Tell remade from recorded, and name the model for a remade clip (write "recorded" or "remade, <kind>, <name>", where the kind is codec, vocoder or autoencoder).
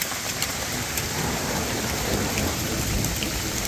remade, vocoder, BigVGAN v2